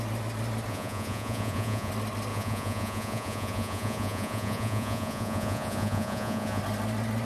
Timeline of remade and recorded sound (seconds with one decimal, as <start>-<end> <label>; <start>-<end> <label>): 0.0-0.7 recorded; 0.7-1.9 remade; 1.9-2.3 recorded; 2.3-6.6 remade; 6.6-7.2 recorded